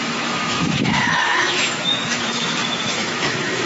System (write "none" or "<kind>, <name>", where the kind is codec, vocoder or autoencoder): autoencoder, DAC-VAE